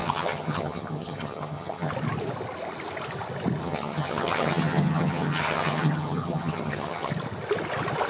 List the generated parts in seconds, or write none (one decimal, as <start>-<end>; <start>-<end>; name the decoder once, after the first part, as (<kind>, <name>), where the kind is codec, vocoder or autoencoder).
0.0-1.9 (vocoder, HiFi-GAN); 3.6-7.1